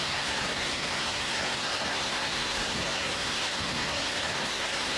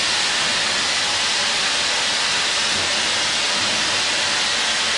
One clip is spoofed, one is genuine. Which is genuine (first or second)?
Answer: second